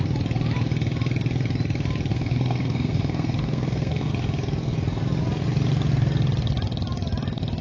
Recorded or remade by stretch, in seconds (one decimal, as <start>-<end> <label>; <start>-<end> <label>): 0.0-2.1 recorded; 2.1-4.1 remade; 4.1-7.6 recorded